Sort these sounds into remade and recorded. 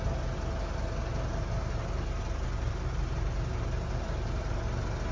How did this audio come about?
recorded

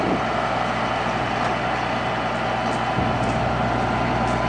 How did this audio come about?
recorded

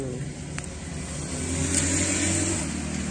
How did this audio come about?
recorded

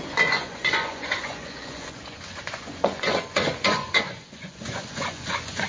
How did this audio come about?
remade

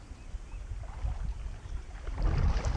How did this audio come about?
recorded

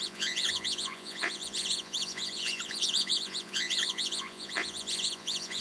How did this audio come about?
remade